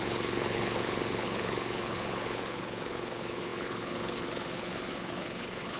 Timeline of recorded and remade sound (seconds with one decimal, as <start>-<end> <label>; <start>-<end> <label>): 0.0-5.8 remade